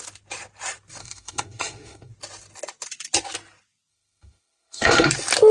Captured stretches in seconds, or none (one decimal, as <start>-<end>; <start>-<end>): 0.0-1.0; 2.1-3.9; 5.1-5.5